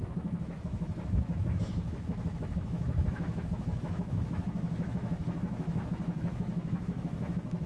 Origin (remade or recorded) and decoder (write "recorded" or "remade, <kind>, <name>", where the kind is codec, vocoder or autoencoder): remade, autoencoder, DAC-VAE